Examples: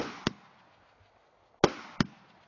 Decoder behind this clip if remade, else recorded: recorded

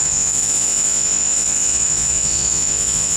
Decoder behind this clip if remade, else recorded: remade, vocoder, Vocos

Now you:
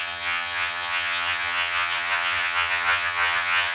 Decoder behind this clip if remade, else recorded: remade, vocoder, HiFi-GAN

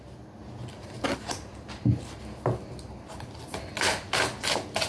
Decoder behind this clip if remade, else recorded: recorded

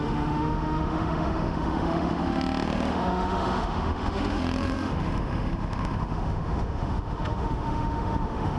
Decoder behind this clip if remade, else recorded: remade, autoencoder, DAC-VAE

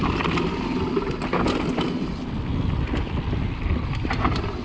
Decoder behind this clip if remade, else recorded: recorded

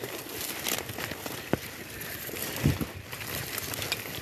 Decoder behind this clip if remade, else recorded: recorded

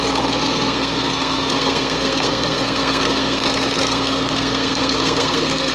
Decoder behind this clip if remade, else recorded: remade, codec, SNAC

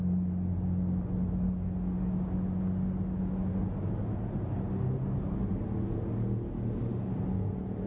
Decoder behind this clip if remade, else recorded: recorded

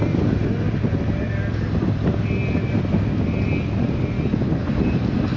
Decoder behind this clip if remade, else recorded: recorded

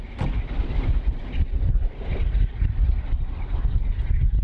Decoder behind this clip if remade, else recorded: recorded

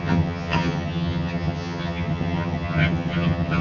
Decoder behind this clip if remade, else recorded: remade, vocoder, HiFi-GAN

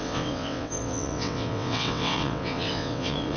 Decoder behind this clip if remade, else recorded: remade, vocoder, WaveNeXt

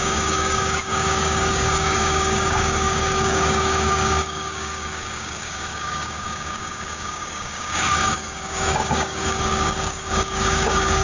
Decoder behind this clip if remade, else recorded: remade, codec, DAC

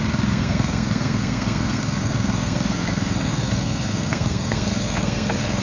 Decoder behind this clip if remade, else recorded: remade, codec, SNAC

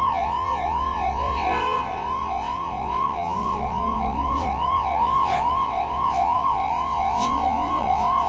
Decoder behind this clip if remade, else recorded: remade, vocoder, WaveNeXt